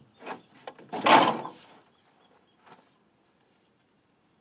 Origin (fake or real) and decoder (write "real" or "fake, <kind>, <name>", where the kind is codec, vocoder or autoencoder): real